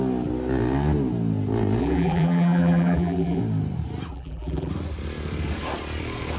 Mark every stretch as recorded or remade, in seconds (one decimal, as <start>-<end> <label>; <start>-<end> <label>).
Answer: 0.0-1.8 recorded; 1.8-3.4 remade; 3.4-4.1 recorded; 4.1-4.7 remade; 4.7-6.4 recorded